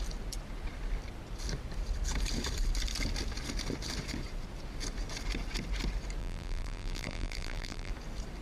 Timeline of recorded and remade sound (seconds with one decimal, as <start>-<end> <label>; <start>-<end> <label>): 0.0-6.2 recorded; 6.2-7.9 remade; 7.9-8.4 recorded